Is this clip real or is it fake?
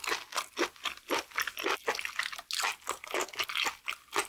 real